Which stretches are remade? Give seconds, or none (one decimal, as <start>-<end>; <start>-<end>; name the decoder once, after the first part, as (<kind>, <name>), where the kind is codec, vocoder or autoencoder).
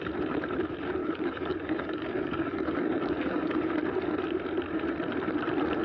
1.0-3.7 (codec, DAC)